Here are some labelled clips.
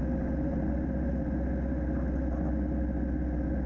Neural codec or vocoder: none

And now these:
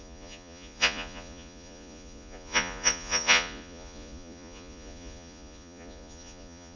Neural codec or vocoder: vocoder, Vocos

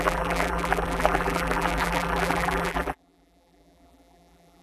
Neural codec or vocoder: vocoder, BigVGAN v2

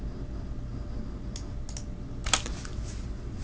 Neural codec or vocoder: none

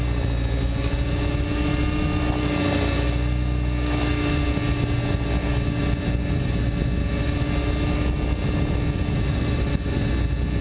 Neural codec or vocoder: none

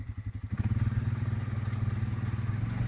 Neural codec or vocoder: none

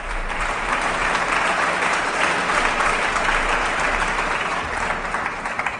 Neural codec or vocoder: vocoder, BigVGAN v2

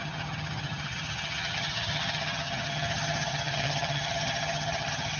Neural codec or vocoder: vocoder, HiFi-GAN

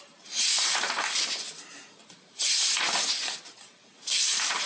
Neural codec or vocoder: none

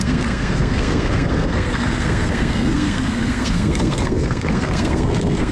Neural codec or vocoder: codec, SNAC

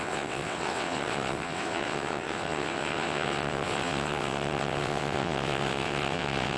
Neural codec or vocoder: vocoder, WaveNeXt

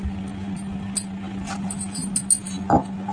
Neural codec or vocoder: none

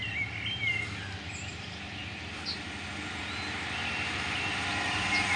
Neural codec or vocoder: none